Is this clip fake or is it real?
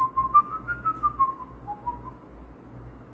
real